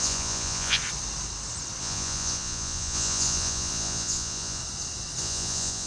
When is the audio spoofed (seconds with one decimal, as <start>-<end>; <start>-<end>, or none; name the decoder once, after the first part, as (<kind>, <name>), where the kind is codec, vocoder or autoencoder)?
0.0-0.8 (vocoder, Vocos); 1.8-4.6; 5.2-5.9